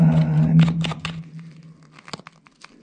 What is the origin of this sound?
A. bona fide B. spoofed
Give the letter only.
A